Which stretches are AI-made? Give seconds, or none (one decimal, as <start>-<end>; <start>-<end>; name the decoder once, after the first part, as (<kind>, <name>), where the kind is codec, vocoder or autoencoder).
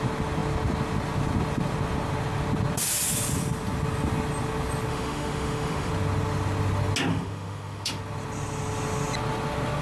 4.9-5.9 (autoencoder, DAC-VAE); 7.1-8.0